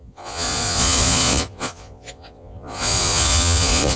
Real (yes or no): no